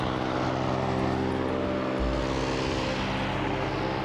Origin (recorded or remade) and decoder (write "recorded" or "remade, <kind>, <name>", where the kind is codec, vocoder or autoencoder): recorded